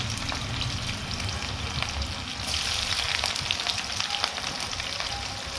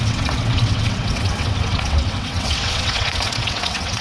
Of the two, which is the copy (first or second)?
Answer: second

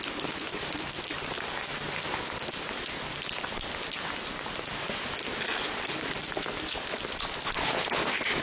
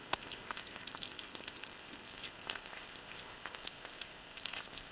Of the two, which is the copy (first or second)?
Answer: second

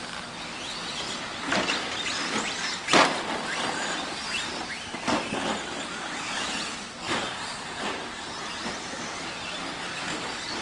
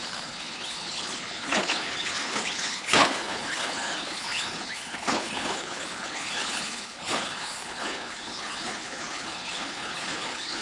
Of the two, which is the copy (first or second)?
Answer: second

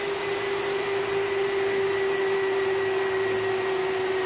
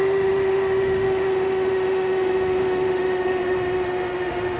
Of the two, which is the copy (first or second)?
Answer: second